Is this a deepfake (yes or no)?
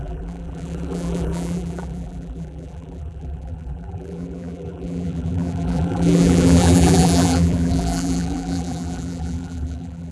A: yes